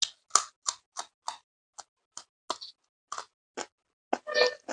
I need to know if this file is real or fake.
real